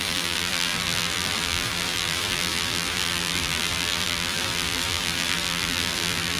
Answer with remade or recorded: remade